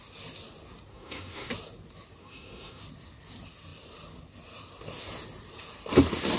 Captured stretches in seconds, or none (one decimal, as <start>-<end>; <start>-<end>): 0.0-0.9; 1.5-2.2; 2.8-6.4